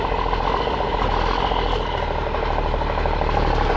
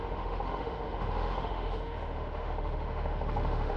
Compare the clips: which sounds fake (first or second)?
second